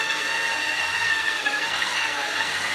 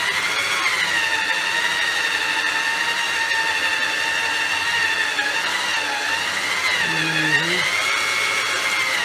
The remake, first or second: first